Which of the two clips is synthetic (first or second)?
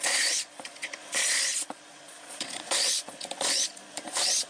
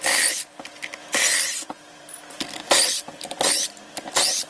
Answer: first